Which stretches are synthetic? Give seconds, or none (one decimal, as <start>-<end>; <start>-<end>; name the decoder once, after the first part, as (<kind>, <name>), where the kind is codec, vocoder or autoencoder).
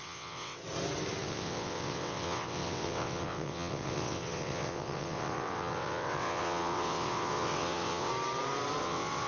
0.0-0.6 (vocoder, WaveNeXt); 1.2-8.1; 8.8-9.3